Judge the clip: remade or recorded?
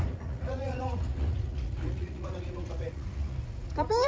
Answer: remade